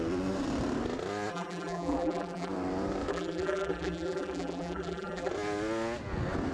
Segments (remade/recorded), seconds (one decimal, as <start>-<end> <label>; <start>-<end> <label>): 0.0-1.3 recorded; 1.3-2.5 remade; 2.5-3.1 recorded; 3.1-5.3 remade; 5.3-6.5 recorded